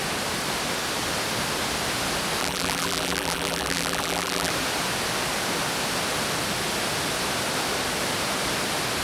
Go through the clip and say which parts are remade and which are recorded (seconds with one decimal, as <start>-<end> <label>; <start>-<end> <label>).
0.0-2.4 recorded; 2.4-4.5 remade; 4.5-9.0 recorded